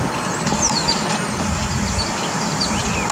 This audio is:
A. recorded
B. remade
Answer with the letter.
A